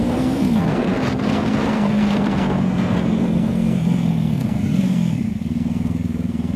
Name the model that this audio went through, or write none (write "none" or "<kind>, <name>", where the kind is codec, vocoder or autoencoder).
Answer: codec, SNAC